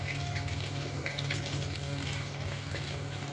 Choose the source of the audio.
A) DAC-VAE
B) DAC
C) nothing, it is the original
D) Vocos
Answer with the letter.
B